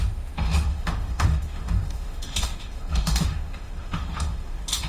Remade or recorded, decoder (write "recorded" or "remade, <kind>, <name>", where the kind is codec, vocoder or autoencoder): remade, autoencoder, DAC-VAE